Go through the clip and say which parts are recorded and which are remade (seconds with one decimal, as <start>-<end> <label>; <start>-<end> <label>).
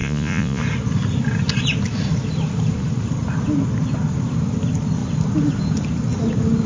0.0-0.6 remade; 0.6-6.7 recorded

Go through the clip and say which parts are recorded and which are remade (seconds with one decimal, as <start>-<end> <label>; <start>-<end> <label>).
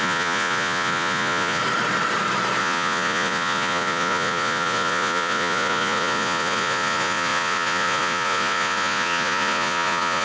0.0-1.6 remade; 1.6-2.6 recorded; 2.6-10.2 remade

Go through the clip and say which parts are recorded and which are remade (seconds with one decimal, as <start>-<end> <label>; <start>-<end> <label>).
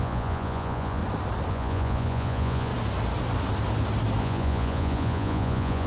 0.0-1.0 remade; 1.0-1.5 recorded; 1.5-2.7 remade; 2.7-4.2 recorded; 4.2-5.9 remade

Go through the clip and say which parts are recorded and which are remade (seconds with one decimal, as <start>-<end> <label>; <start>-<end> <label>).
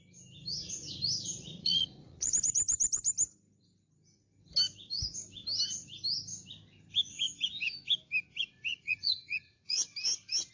0.0-1.3 recorded; 1.3-2.3 remade; 2.3-8.7 recorded; 8.7-9.8 remade; 9.8-10.5 recorded